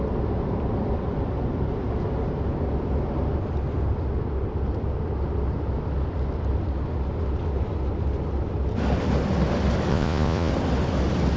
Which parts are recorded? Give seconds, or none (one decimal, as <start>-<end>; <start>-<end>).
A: 0.0-9.9; 10.5-11.4